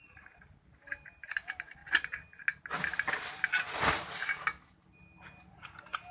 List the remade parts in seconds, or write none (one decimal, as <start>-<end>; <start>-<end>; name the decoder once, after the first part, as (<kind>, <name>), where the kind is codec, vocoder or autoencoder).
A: 0.0-1.8 (vocoder, BigVGAN v2); 5.5-6.1